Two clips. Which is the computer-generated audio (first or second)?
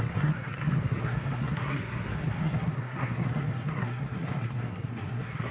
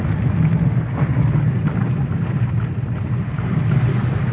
first